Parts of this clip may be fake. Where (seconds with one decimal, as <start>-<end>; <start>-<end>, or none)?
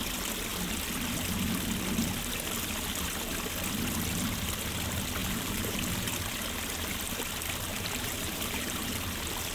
5.2-5.8; 7.7-8.9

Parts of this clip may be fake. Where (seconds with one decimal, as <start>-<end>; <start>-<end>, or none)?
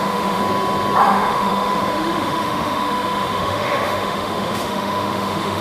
0.0-0.4; 1.0-5.6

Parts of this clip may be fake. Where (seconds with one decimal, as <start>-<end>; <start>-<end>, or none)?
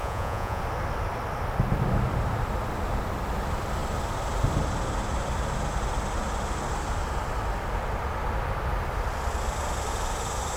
0.0-0.6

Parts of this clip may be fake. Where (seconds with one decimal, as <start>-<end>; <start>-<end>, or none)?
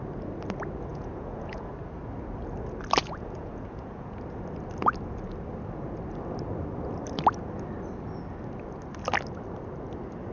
0.9-1.7; 3.0-4.2